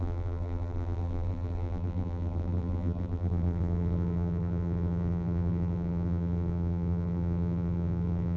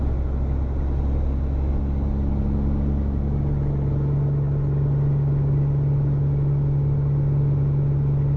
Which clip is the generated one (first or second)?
first